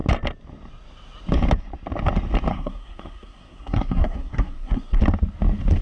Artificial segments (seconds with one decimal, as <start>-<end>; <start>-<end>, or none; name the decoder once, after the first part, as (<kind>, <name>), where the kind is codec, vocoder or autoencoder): 2.5-5.0 (codec, SNAC)